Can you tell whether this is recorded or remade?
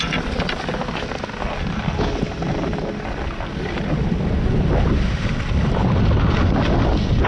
recorded